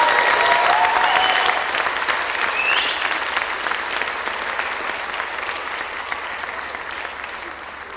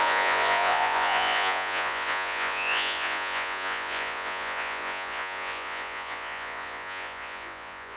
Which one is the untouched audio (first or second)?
first